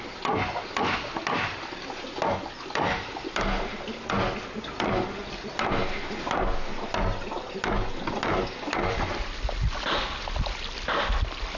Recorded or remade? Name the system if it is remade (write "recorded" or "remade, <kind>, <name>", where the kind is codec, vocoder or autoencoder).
recorded